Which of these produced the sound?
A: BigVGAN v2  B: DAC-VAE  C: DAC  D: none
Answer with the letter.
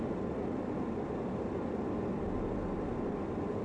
D